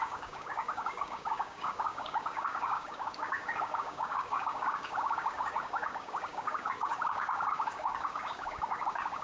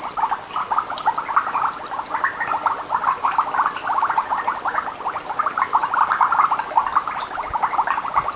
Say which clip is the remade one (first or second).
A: first